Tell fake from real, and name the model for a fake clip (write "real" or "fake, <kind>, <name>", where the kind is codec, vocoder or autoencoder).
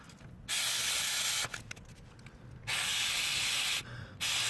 real